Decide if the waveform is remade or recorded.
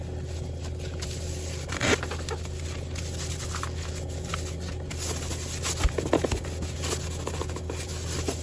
recorded